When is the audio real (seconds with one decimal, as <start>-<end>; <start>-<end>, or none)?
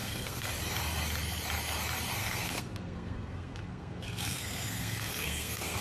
0.5-2.2